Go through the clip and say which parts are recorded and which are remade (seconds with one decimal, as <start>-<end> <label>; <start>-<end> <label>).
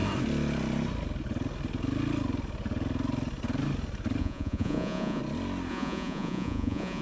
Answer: 0.0-4.2 recorded; 4.2-5.2 remade; 5.2-5.7 recorded; 5.7-7.0 remade